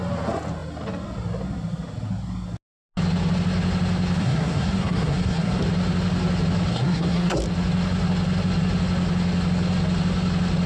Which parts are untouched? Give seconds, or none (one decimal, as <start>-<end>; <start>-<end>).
0.0-4.2; 5.6-6.7; 7.4-10.7